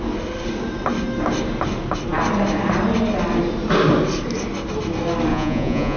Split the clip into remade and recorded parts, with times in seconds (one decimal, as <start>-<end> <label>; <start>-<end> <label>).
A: 0.0-5.3 recorded; 5.3-6.0 remade